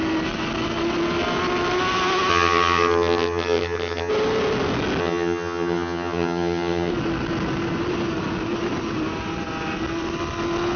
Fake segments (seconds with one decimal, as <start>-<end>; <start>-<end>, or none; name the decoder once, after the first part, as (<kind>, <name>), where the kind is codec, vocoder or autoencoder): 2.3-4.1 (vocoder, HiFi-GAN); 5.0-6.9